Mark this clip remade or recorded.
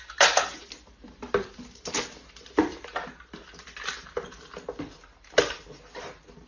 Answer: recorded